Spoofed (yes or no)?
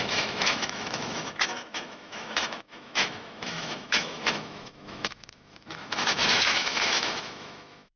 yes